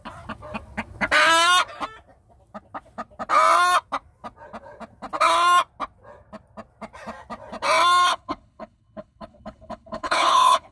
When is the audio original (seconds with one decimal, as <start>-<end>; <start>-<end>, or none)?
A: 0.0-8.1